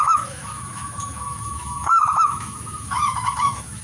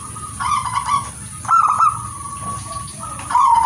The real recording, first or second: second